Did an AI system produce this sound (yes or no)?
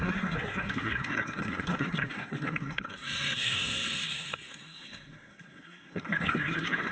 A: yes